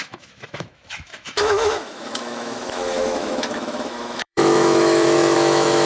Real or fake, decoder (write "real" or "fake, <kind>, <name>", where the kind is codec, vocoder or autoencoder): fake, autoencoder, DAC-VAE